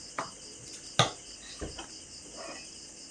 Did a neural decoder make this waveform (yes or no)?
no